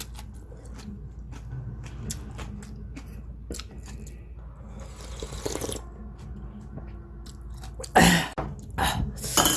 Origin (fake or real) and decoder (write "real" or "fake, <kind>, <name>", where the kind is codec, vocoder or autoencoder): real